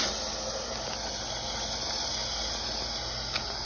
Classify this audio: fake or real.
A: real